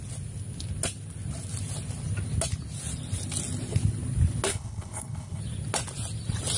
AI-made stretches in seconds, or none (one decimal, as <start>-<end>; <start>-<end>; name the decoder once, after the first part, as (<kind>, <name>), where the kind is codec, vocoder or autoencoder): 4.5-5.4 (codec, HILCodec)